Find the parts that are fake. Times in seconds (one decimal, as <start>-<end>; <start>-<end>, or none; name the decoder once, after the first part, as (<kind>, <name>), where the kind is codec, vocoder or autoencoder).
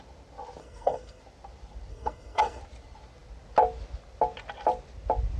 0.6-1.2 (codec, SNAC); 1.9-2.6